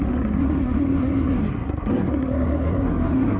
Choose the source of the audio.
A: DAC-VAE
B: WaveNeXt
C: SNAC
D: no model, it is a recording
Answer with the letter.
C